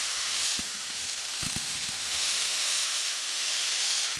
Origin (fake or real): fake